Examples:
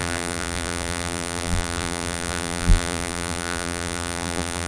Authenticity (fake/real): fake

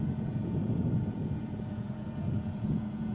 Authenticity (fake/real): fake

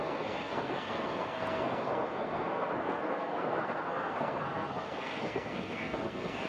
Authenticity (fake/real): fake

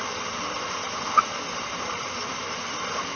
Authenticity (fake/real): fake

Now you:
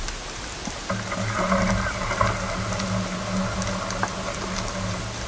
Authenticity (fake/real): real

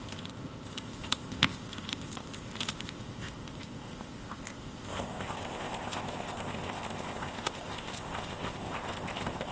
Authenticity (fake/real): fake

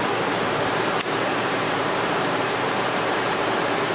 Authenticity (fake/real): fake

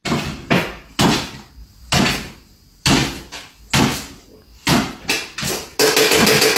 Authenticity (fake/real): real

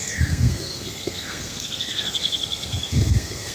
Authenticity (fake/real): fake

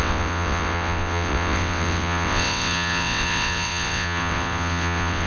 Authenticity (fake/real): fake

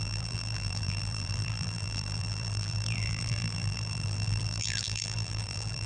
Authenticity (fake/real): fake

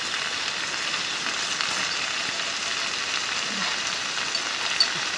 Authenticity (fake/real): real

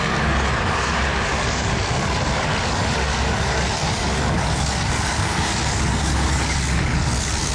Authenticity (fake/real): fake